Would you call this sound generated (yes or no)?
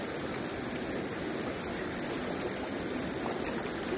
no